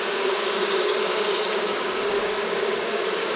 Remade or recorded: remade